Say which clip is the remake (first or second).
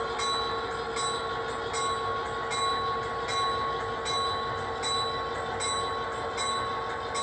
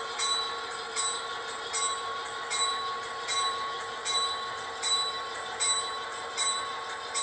second